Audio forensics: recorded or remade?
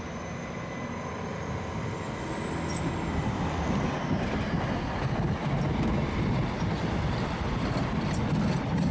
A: recorded